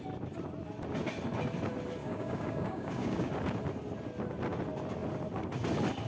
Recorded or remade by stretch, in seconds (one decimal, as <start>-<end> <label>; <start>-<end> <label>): 0.0-2.0 recorded; 2.0-3.3 remade; 3.3-6.1 recorded